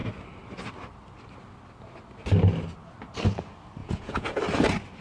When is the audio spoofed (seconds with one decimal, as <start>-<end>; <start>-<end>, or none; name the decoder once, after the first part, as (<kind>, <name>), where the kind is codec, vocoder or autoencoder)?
3.8-4.4 (vocoder, Vocos)